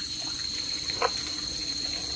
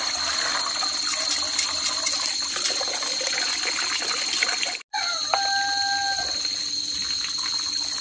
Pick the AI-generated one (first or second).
first